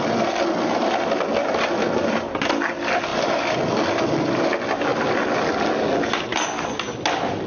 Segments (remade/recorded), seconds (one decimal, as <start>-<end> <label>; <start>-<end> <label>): 0.0-7.5 recorded